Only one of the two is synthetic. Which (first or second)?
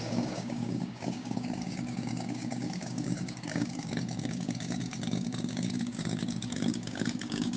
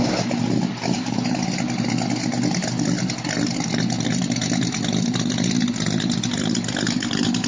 first